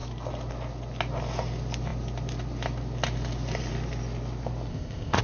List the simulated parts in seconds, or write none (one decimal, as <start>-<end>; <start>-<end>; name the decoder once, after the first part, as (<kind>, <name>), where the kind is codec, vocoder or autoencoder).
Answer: 4.7-5.2 (codec, ZipCodec)